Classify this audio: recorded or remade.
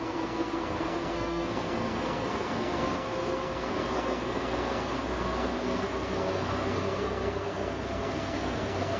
remade